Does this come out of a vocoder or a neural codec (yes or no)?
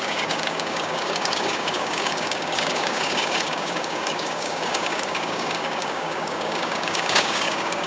yes